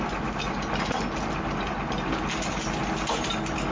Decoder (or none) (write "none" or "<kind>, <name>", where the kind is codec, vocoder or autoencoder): none